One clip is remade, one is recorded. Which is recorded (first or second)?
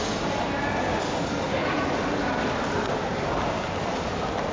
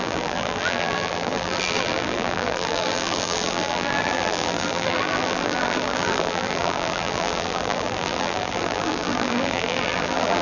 first